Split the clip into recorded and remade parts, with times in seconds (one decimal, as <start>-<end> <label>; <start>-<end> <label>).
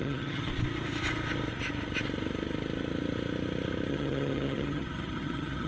0.0-0.5 remade; 0.5-3.9 recorded; 3.9-5.7 remade